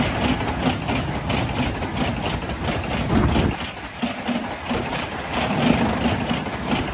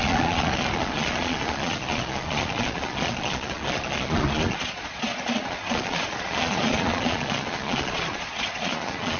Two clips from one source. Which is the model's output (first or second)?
second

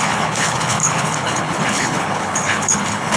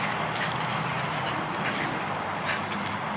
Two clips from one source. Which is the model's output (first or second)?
first